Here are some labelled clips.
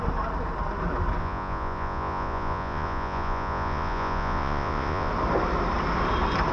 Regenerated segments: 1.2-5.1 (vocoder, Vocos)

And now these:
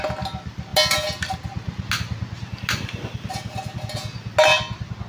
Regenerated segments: none

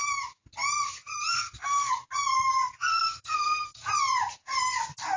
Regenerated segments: 1.3-1.9 (codec, SNAC); 2.8-3.8

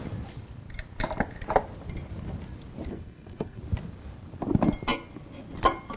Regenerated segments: 2.9-3.6 (codec, SNAC)

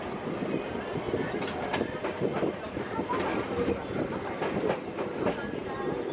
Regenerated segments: none

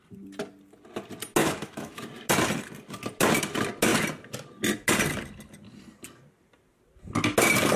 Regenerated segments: 1.4-2.1 (autoencoder, DAC-VAE)

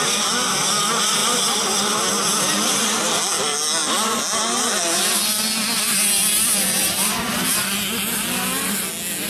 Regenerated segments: none